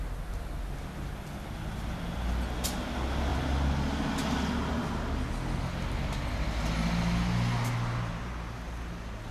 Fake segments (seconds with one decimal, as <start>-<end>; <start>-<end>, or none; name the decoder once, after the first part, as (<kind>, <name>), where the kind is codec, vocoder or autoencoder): none